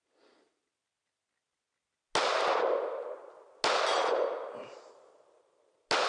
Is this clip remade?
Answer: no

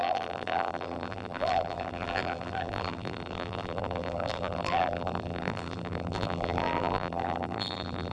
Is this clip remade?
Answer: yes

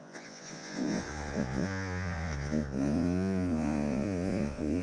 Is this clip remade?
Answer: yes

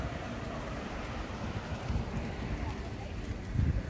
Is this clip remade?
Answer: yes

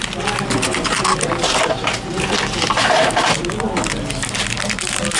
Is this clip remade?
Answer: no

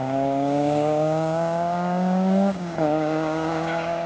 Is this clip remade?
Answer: yes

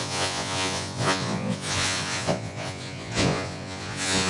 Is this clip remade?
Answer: yes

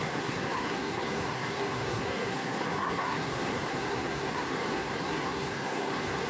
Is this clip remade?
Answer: yes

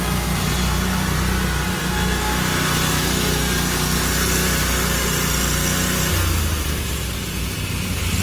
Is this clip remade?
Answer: no